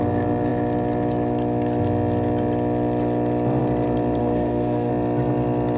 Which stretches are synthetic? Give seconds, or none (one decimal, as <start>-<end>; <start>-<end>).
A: 4.2-4.9